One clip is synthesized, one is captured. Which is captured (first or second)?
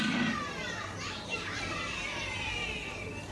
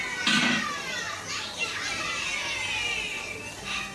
second